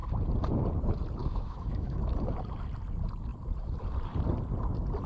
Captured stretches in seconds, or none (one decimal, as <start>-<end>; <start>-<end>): 0.0-1.2; 2.0-5.1